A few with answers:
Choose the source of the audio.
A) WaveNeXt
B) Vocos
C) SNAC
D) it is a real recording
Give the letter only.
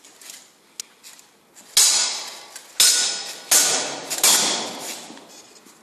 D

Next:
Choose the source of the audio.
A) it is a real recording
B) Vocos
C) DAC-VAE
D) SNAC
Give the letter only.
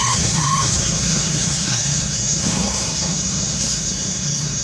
D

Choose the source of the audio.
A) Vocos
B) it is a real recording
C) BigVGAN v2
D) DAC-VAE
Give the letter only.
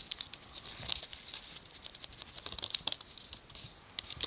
B